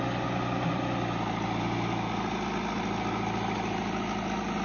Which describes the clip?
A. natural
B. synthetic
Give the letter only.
A